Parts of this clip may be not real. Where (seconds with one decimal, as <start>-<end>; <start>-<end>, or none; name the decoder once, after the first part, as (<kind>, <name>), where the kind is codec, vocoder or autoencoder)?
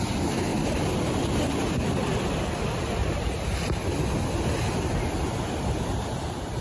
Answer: 0.5-1.3 (vocoder, BigVGAN v2); 3.0-3.9